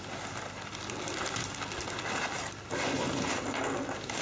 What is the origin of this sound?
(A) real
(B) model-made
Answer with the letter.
A